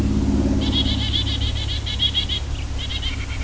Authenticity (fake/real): real